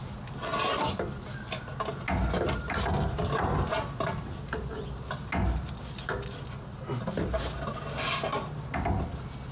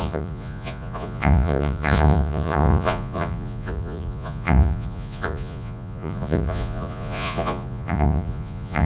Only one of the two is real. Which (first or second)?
first